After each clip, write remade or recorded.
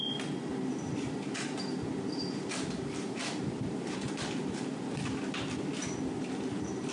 remade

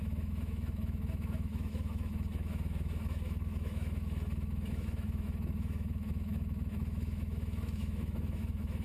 remade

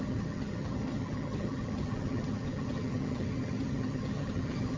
remade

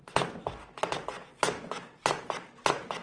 recorded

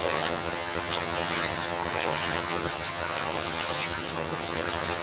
remade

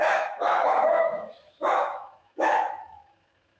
remade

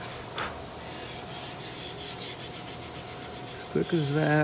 recorded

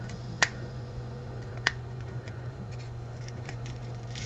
remade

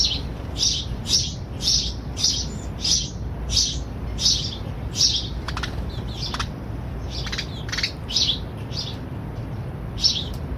recorded